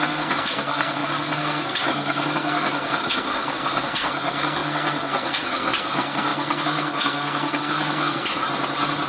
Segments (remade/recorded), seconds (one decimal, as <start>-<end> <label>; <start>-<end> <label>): 0.0-8.4 remade; 8.4-9.1 recorded